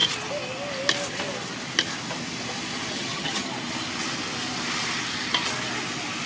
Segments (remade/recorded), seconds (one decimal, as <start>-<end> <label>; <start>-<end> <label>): 0.0-2.9 recorded; 2.9-3.5 remade; 3.5-6.3 recorded

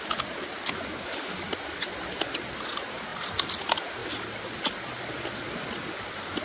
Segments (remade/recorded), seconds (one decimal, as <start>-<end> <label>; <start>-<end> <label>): 0.0-6.4 recorded

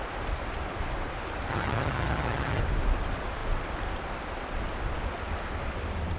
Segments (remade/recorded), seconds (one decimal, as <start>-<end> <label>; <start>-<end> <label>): 0.0-1.5 recorded; 1.5-2.6 remade; 2.6-6.2 recorded

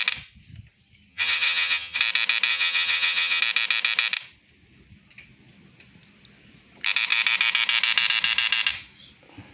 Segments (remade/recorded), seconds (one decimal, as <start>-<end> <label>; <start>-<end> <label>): 0.0-1.1 recorded; 1.1-2.0 remade; 2.0-2.5 recorded; 2.5-3.4 remade; 3.4-9.5 recorded